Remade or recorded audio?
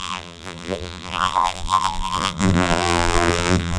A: remade